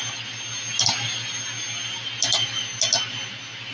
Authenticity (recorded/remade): recorded